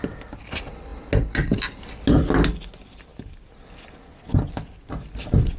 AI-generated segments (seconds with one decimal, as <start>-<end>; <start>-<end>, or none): none